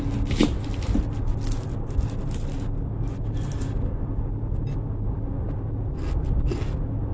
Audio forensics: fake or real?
real